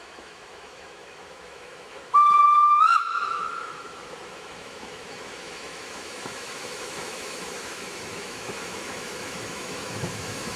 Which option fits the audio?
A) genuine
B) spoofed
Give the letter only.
B